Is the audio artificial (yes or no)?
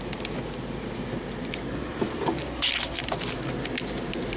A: no